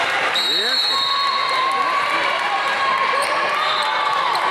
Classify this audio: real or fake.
real